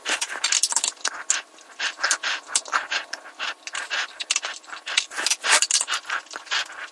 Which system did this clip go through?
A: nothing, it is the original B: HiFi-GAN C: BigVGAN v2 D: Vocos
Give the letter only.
A